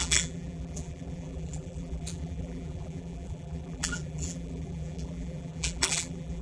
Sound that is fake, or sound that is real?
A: fake